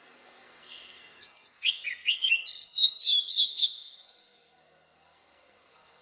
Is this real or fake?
fake